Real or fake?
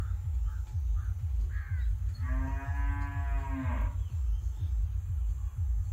real